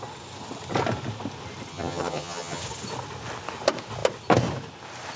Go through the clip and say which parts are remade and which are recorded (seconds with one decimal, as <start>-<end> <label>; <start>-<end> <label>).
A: 0.0-1.7 recorded; 1.7-2.6 remade; 2.6-5.2 recorded